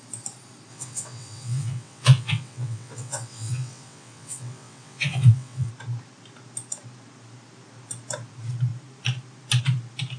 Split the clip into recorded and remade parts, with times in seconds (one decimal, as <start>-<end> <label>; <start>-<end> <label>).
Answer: 0.0-0.7 recorded; 0.7-5.7 remade; 5.7-10.2 recorded